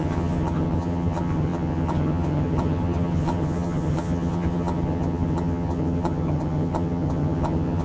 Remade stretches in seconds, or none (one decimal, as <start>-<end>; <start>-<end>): 0.0-7.8